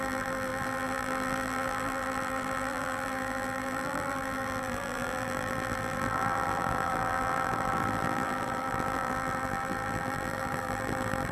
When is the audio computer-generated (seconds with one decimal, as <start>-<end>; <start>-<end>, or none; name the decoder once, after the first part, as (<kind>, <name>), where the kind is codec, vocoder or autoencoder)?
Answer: 0.0-11.3 (vocoder, BigVGAN v2)